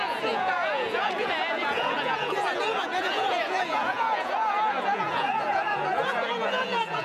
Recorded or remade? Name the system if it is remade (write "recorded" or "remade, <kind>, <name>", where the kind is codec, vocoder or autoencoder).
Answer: remade, vocoder, Vocos